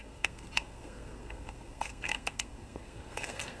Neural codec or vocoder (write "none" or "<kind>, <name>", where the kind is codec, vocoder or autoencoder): codec, SNAC